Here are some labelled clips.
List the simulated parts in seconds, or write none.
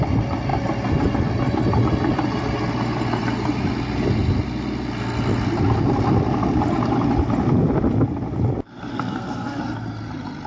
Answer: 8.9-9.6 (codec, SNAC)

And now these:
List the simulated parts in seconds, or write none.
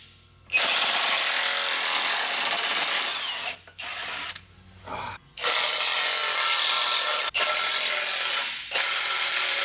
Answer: none